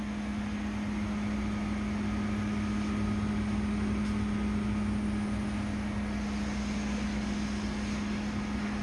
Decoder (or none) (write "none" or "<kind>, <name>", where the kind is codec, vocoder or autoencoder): none